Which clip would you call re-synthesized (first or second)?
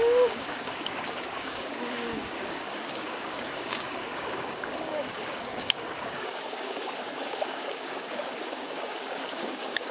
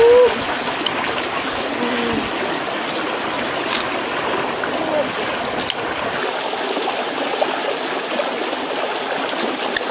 first